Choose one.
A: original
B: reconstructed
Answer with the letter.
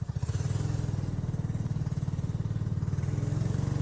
A